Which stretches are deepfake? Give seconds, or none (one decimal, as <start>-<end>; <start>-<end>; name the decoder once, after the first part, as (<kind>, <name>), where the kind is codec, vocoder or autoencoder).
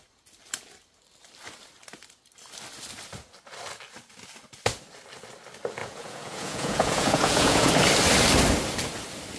5.8-7.7 (vocoder, Vocos)